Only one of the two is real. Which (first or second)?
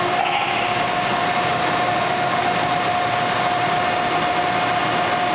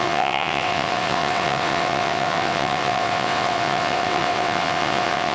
first